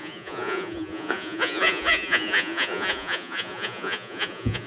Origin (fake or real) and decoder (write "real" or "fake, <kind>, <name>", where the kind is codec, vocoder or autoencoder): fake, vocoder, Vocos